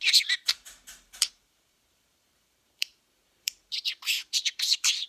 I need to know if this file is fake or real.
fake